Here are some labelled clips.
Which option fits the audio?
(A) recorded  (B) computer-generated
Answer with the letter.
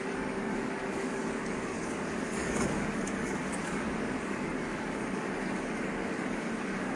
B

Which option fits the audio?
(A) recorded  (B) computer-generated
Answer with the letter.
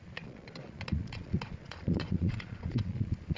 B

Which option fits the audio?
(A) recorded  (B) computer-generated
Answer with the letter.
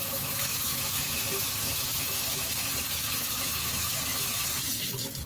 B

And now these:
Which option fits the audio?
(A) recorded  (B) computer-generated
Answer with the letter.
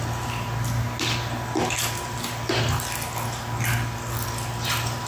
A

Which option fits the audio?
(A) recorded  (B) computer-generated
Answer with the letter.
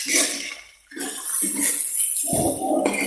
A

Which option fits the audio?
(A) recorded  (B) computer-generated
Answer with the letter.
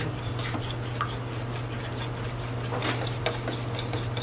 A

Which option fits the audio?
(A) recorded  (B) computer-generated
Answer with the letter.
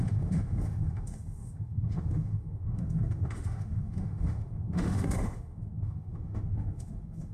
B